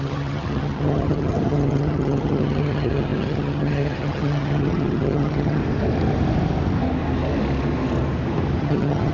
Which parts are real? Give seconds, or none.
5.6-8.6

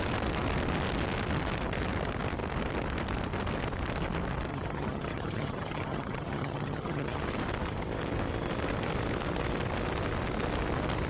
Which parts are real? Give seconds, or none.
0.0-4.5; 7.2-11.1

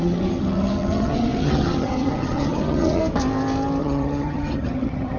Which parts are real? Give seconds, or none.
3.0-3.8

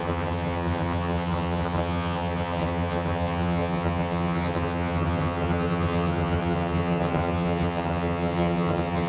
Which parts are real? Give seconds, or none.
none